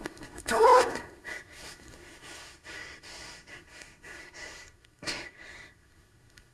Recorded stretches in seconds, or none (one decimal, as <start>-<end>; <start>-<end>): none